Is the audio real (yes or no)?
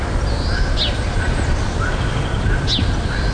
yes